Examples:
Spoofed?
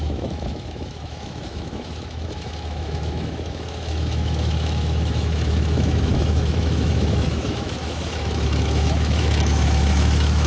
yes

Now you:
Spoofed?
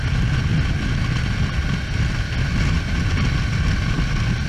no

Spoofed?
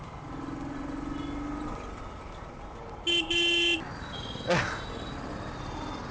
no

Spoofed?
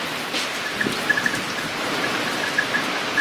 no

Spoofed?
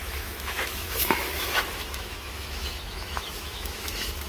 yes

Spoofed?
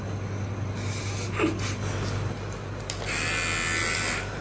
no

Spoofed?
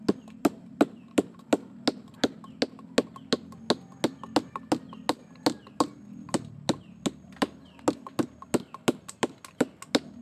no